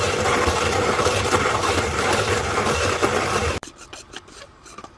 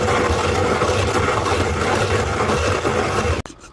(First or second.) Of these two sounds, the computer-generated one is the first